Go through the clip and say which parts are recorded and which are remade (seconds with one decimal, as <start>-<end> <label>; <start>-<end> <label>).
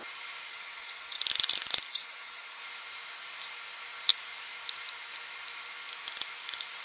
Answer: 0.0-0.5 recorded; 0.5-1.2 remade; 1.2-1.9 recorded; 1.9-2.6 remade; 2.6-6.8 recorded